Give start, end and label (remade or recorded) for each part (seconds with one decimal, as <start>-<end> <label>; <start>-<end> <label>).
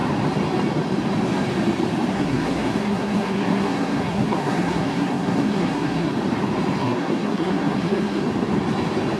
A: 0.0-2.1 recorded; 2.1-6.1 remade; 6.1-6.8 recorded; 6.8-8.2 remade; 8.2-9.2 recorded